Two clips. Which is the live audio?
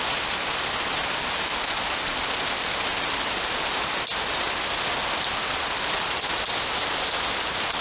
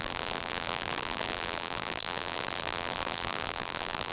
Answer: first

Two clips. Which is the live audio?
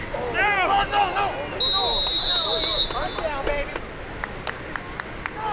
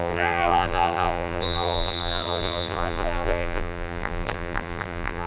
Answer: first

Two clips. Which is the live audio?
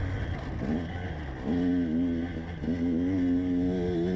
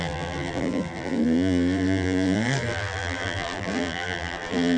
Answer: first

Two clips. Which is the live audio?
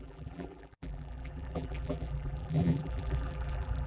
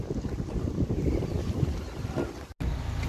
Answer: second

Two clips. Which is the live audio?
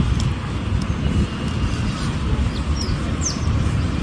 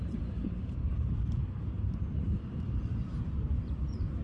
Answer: first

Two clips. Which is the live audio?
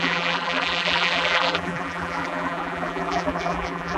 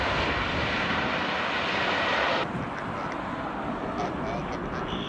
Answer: second